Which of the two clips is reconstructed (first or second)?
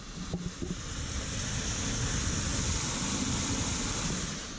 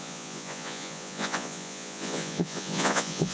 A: second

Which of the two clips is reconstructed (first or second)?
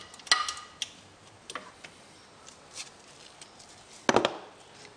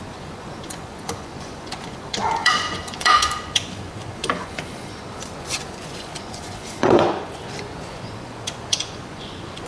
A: second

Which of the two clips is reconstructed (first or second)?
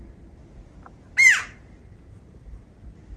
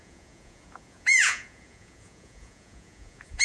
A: second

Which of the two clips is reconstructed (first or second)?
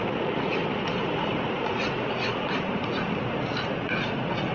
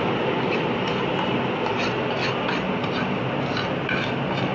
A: first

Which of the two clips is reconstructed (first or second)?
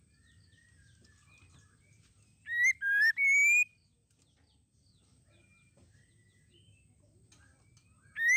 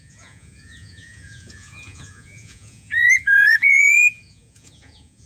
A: second